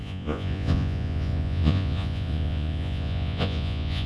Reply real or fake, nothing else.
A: fake